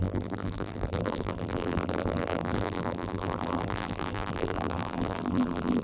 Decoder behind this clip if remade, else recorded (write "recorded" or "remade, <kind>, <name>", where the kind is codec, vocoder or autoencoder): remade, vocoder, BigVGAN v2